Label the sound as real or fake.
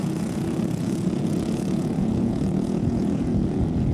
fake